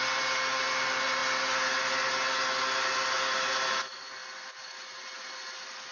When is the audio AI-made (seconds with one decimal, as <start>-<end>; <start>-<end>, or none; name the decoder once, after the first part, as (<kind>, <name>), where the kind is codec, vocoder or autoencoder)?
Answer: none